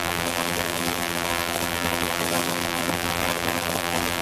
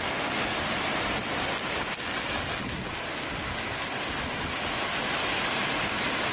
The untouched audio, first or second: second